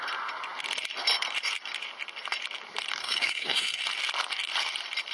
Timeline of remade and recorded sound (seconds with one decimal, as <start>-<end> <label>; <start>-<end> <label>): 0.0-3.0 recorded; 3.0-3.8 remade; 3.8-5.1 recorded